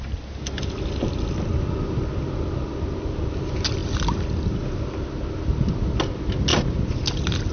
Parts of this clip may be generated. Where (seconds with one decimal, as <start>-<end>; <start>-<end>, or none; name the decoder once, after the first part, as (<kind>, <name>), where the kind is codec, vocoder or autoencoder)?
none

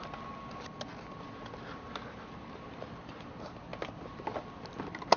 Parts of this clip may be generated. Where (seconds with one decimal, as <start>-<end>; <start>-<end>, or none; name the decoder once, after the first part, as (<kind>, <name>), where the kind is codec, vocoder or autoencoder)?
none

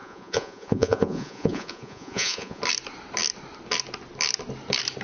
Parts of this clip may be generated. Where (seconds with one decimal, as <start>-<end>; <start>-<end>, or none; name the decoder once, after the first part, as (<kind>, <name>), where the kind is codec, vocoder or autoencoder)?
0.0-2.6 (vocoder, Vocos)

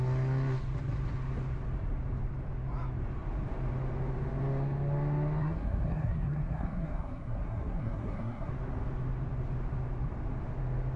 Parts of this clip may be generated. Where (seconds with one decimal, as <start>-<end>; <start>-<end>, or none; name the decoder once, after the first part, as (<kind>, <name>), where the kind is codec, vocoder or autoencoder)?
5.4-8.5 (codec, SNAC)

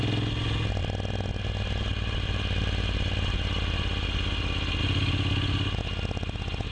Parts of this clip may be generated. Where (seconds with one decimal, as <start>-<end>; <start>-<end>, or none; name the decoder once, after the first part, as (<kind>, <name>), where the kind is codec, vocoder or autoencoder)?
none

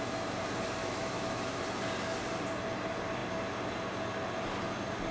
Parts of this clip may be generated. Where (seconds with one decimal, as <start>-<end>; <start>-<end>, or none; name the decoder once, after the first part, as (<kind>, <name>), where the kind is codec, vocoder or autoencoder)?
0.8-1.6 (autoencoder, DAC-VAE)

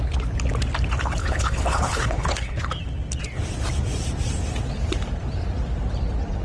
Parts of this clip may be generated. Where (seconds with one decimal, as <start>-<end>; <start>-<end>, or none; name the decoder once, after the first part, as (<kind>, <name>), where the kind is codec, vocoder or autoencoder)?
1.2-2.7 (codec, HILCodec)